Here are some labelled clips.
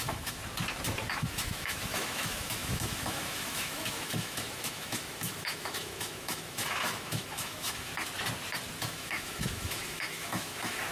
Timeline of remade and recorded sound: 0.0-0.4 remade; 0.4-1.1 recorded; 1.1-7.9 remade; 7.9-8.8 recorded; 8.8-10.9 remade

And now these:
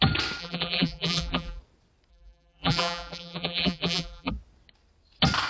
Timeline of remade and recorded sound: 0.0-0.4 recorded; 0.4-1.6 remade; 1.6-2.1 recorded; 2.1-4.3 remade; 4.3-5.5 recorded